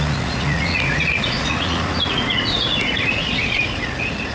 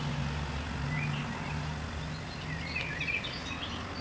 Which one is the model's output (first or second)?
first